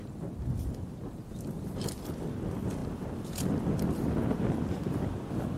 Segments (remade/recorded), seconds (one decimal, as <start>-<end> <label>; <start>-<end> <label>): 0.0-5.6 recorded